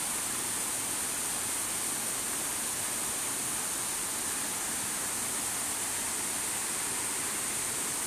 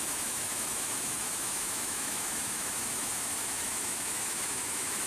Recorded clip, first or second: first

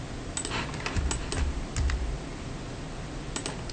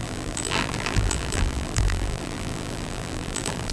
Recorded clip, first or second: first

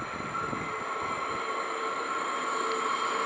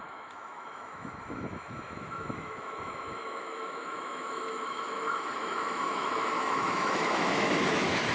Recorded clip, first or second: first